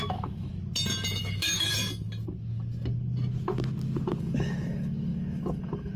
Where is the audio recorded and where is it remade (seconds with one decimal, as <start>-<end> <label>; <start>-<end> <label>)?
0.0-0.5 remade; 0.5-1.2 recorded; 1.2-1.8 remade; 1.8-4.2 recorded; 4.2-6.0 remade